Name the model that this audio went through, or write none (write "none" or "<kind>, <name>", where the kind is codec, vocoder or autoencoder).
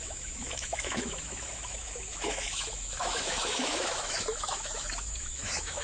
autoencoder, DAC-VAE